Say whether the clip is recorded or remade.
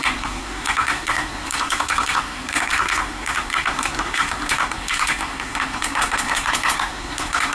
remade